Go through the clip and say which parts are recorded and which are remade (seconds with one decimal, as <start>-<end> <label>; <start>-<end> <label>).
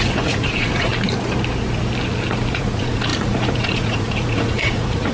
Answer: 0.0-0.9 remade; 0.9-2.5 recorded; 2.5-5.1 remade